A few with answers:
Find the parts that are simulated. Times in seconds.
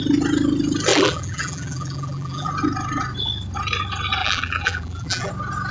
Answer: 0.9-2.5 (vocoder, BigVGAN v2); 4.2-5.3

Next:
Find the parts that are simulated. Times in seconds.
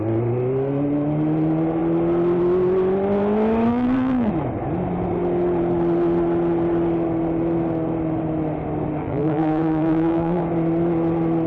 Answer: 3.7-4.3 (vocoder, BigVGAN v2); 9.0-10.4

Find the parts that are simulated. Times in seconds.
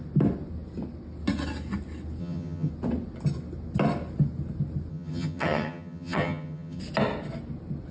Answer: 2.2-2.7 (vocoder, HiFi-GAN); 4.9-6.8